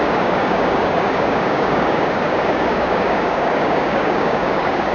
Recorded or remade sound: remade